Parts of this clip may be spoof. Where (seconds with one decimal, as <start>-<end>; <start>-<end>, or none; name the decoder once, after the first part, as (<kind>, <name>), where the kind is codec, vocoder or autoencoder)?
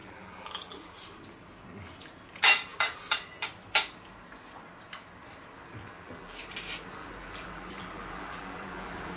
0.0-1.0 (vocoder, BigVGAN v2); 5.8-6.4; 7.0-9.2